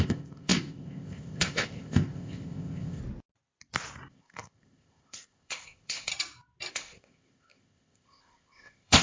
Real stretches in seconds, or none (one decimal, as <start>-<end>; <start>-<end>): 3.0-4.1; 6.1-6.7